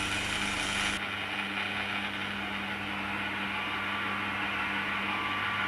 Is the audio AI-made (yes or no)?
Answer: no